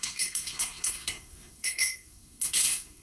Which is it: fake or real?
fake